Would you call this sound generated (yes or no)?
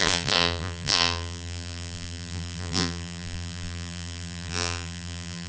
yes